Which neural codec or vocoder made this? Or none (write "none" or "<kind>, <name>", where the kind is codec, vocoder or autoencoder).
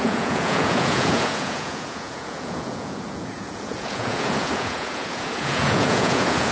vocoder, Vocos